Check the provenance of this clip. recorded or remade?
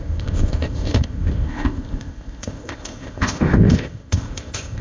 remade